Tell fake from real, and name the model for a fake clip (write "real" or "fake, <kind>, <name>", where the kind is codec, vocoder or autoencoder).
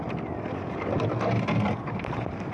real